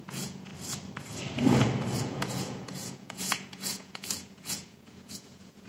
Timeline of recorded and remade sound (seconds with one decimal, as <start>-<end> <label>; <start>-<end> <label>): 0.0-0.5 remade; 0.5-2.0 recorded; 2.0-5.7 remade